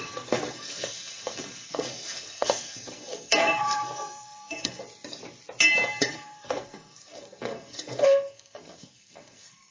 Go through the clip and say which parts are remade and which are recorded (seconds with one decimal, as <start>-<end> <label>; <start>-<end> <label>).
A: 0.0-4.8 remade; 4.8-6.0 recorded; 6.0-9.7 remade